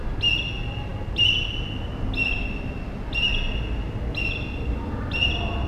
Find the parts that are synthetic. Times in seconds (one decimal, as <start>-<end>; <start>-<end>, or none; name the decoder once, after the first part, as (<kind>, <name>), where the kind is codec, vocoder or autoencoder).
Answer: none

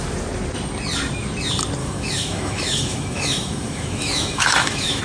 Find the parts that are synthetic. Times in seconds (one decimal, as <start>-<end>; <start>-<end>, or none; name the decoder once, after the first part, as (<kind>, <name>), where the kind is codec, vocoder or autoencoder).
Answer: 1.8-5.0 (autoencoder, DAC-VAE)

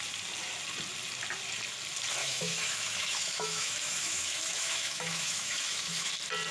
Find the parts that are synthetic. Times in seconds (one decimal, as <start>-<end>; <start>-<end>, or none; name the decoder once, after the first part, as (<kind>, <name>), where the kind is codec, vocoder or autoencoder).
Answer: 2.2-6.1 (autoencoder, DAC-VAE)

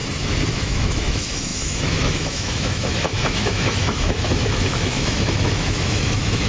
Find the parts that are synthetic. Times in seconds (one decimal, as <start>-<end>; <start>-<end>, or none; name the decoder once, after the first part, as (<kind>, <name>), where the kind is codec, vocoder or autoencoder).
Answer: 0.5-6.5 (autoencoder, DAC-VAE)

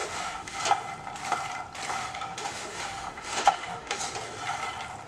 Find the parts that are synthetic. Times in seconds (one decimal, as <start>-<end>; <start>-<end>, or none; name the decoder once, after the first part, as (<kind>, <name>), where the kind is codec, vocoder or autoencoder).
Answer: 0.0-0.6 (autoencoder, DAC-VAE); 2.0-4.0

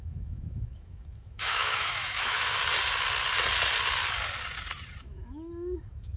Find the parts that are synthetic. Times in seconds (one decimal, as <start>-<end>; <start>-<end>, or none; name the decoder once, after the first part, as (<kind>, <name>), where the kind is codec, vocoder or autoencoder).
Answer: 0.0-2.6 (autoencoder, DAC-VAE); 5.0-6.2

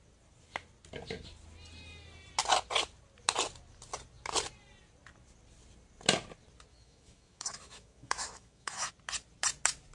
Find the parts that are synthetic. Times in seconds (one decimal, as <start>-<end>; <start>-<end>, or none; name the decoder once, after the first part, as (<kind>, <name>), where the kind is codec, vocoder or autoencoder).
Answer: 6.7-8.9 (autoencoder, DAC-VAE)